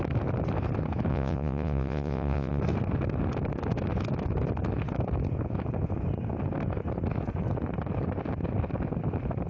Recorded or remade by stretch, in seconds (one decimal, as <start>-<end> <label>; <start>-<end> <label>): 0.0-1.1 recorded; 1.1-2.6 remade; 2.6-9.5 recorded